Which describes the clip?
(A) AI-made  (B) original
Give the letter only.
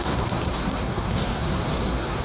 A